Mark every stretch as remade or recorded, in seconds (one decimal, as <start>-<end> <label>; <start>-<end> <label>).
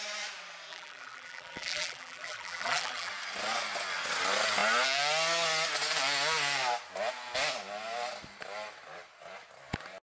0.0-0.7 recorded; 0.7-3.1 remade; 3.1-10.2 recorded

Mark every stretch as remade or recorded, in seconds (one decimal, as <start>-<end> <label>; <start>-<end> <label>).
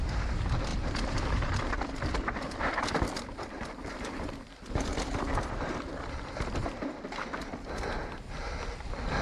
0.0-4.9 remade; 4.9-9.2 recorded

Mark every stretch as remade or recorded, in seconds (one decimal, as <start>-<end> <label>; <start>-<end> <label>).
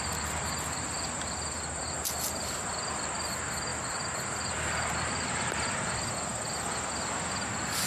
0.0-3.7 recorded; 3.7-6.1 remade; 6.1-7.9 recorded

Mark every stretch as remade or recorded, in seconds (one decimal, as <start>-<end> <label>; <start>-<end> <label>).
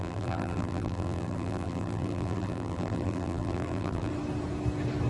0.0-4.1 remade; 4.1-5.1 recorded